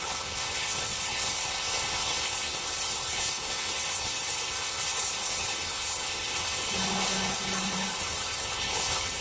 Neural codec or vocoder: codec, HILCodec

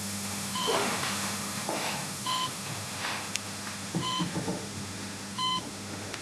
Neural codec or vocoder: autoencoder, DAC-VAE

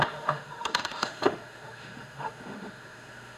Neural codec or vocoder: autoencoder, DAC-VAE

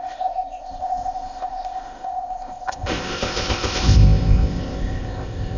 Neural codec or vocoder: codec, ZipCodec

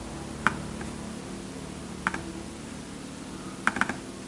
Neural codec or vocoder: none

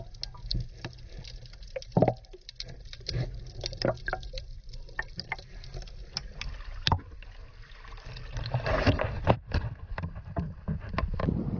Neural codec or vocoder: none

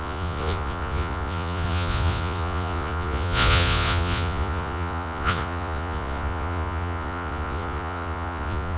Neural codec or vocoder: vocoder, Vocos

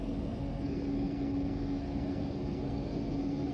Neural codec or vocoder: codec, SNAC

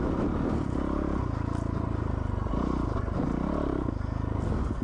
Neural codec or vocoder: none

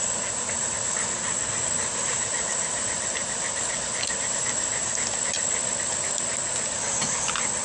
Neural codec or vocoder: vocoder, BigVGAN v2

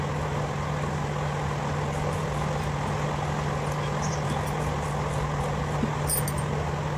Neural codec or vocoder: none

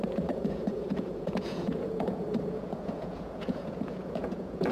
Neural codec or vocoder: vocoder, Vocos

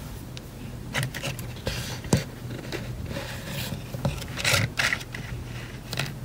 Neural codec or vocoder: none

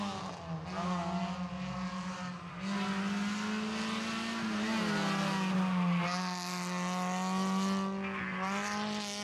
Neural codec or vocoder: none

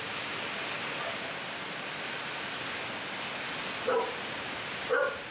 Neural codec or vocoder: none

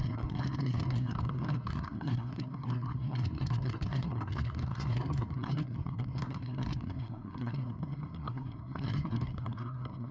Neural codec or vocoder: codec, SNAC